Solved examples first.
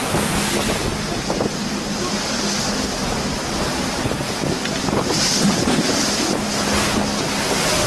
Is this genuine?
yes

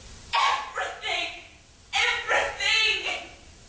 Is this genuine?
yes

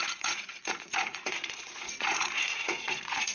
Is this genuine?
no